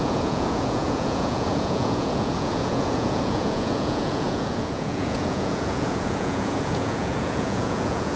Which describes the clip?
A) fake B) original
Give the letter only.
A